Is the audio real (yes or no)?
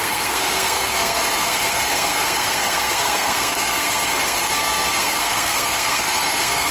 no